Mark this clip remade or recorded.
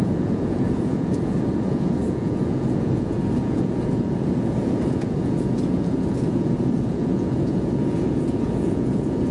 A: remade